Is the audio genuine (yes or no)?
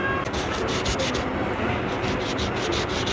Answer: yes